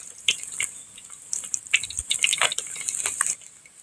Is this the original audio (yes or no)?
yes